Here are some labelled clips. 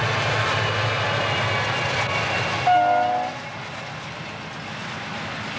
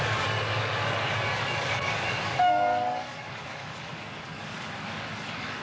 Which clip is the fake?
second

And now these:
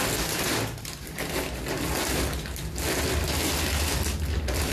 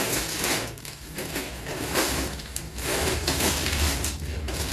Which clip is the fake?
second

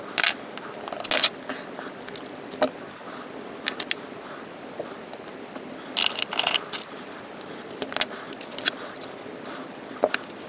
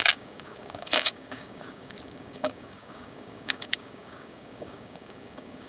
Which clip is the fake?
second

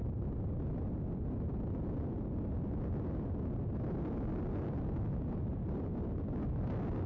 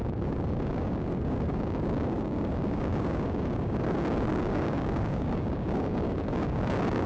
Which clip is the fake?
second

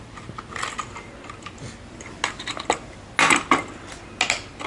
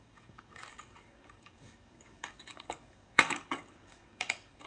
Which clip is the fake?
second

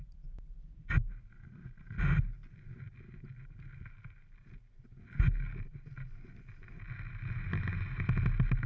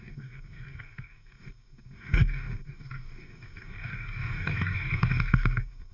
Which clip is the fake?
second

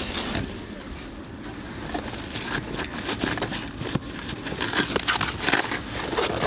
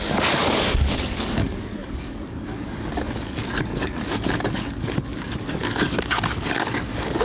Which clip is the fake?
second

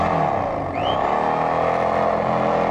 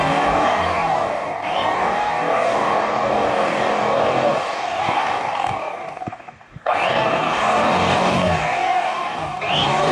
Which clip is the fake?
second